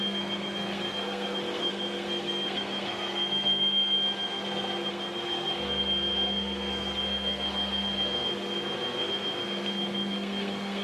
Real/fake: fake